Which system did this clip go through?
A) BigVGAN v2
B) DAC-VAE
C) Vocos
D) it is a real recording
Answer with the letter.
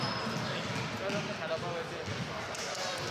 D